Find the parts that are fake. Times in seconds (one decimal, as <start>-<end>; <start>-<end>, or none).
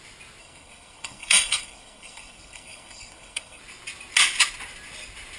0.4-3.6